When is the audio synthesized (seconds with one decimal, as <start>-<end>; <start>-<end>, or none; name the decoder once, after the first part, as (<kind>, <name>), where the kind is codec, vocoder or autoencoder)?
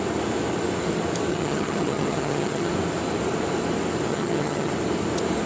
1.3-2.7 (vocoder, HiFi-GAN); 4.1-4.7